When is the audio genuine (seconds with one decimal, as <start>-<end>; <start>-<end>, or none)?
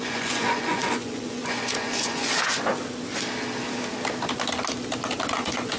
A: 2.7-5.3